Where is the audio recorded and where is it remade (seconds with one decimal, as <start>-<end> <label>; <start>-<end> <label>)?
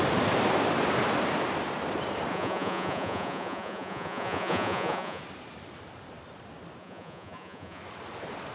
0.0-2.3 recorded; 2.3-5.2 remade; 5.2-6.8 recorded; 6.8-7.8 remade; 7.8-8.5 recorded